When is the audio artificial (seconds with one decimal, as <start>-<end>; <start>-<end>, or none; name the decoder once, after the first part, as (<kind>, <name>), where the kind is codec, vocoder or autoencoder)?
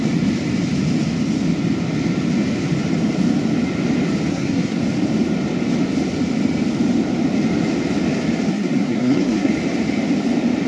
4.3-4.8 (codec, SNAC); 8.5-9.5